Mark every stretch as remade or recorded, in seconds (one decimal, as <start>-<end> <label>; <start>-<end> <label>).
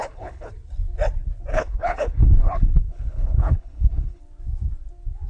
0.0-0.5 remade; 0.5-1.5 recorded; 1.5-4.2 remade; 4.2-5.3 recorded